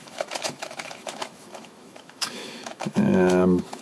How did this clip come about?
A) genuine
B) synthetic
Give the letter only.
B